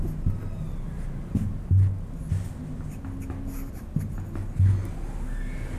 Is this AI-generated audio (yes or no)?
no